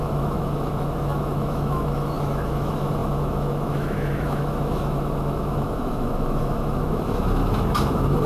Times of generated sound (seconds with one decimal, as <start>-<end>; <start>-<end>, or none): 0.0-8.3